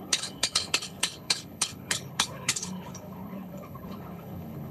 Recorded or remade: remade